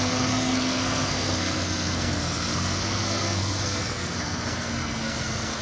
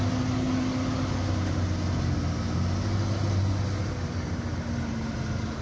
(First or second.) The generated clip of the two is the first